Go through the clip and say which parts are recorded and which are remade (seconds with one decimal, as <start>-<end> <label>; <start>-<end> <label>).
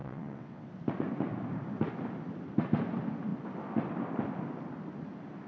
0.0-0.7 remade; 0.7-5.5 recorded